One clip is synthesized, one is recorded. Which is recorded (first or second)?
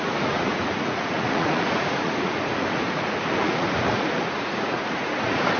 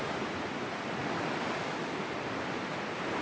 second